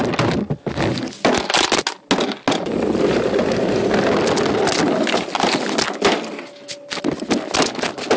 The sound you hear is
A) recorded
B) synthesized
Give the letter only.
A